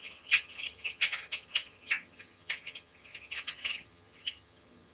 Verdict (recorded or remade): remade